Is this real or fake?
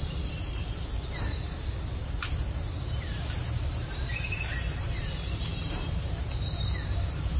fake